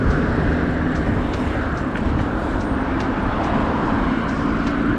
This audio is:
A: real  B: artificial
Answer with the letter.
B